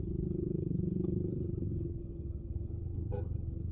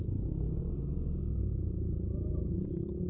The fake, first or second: first